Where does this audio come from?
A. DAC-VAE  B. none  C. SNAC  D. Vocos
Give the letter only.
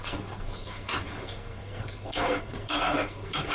C